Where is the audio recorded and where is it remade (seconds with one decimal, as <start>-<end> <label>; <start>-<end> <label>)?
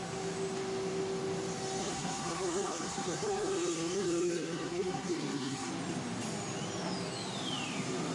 0.0-1.8 recorded; 1.8-5.7 remade; 5.7-8.1 recorded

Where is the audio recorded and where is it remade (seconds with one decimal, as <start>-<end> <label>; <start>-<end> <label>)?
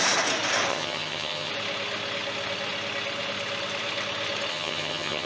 0.0-0.7 recorded; 0.7-1.5 remade; 1.5-4.5 recorded; 4.5-5.3 remade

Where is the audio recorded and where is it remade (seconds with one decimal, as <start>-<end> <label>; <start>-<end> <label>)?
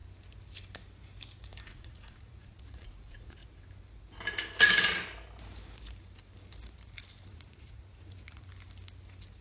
0.0-1.6 recorded; 1.6-3.4 remade; 3.4-7.3 recorded; 7.3-8.5 remade; 8.5-9.4 recorded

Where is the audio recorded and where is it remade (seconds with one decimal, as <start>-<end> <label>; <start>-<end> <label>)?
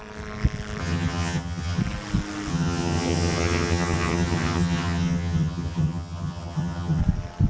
0.0-0.8 recorded; 0.8-1.8 remade; 1.8-2.5 recorded; 2.5-7.0 remade; 7.0-7.5 recorded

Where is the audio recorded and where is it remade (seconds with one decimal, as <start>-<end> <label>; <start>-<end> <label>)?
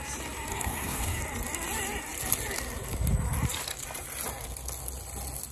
0.0-0.5 recorded; 0.5-1.2 remade; 1.2-5.5 recorded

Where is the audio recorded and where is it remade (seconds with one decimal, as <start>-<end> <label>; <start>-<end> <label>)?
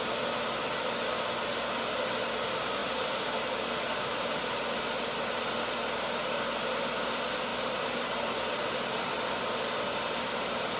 0.0-2.8 recorded; 2.8-4.8 remade; 4.8-7.5 recorded; 7.5-9.1 remade; 9.1-10.8 recorded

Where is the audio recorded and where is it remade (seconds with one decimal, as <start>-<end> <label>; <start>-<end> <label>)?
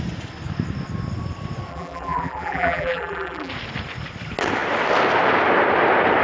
0.0-1.7 recorded; 1.7-3.5 remade; 3.5-6.2 recorded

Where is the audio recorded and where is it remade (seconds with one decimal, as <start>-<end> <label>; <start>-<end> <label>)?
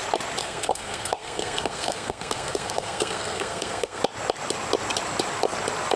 0.0-0.4 recorded; 0.4-4.0 remade; 4.0-6.0 recorded